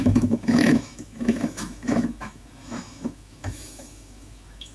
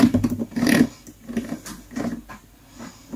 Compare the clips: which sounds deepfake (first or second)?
first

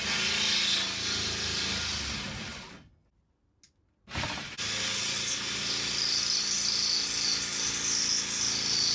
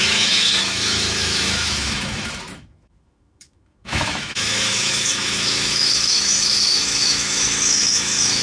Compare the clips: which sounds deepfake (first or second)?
second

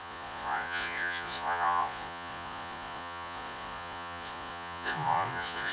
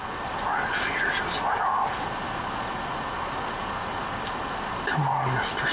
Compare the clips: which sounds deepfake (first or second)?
first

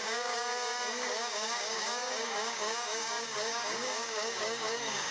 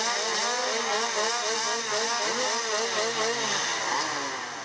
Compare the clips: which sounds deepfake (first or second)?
first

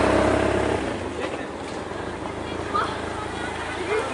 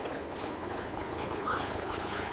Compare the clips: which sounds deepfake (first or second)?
second